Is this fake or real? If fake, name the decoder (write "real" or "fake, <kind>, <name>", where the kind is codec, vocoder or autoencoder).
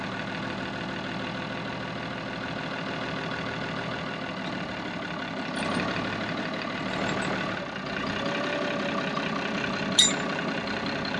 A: real